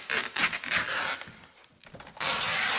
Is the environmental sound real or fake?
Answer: real